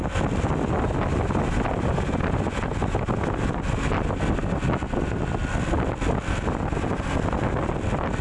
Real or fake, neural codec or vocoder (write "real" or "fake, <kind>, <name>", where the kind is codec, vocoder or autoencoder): real